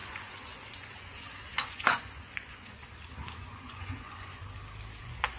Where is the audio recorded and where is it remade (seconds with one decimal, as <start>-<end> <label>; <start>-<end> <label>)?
0.0-2.8 remade; 2.8-3.4 recorded; 3.4-4.4 remade; 4.4-5.0 recorded; 5.0-5.4 remade